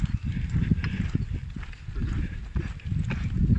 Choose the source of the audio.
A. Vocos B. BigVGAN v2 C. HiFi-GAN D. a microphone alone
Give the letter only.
D